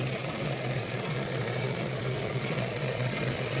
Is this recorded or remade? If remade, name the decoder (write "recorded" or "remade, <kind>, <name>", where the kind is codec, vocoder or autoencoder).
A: remade, vocoder, Vocos